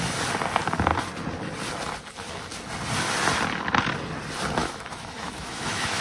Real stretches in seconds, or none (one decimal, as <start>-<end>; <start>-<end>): 0.0-4.6